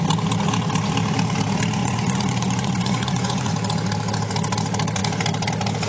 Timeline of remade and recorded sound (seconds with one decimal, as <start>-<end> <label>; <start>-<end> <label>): 0.0-1.8 recorded; 1.8-3.5 remade; 3.5-5.9 recorded